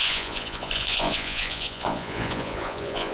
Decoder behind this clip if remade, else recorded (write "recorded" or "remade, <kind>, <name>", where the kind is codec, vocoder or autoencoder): remade, vocoder, Vocos